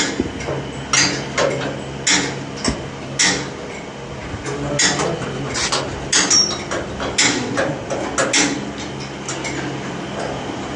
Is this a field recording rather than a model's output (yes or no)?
yes